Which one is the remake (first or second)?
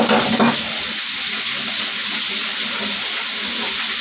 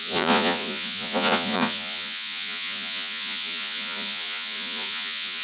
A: second